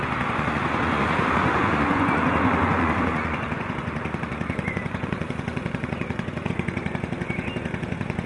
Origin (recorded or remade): remade